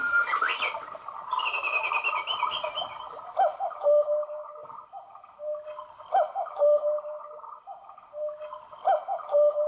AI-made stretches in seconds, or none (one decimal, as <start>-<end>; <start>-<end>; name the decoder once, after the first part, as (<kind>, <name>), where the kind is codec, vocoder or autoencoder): none